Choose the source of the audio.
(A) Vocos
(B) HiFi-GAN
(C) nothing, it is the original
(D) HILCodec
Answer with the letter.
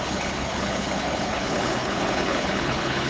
D